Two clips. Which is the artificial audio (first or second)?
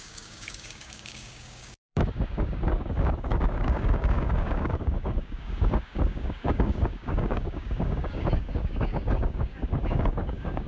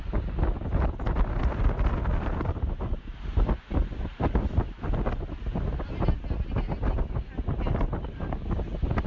first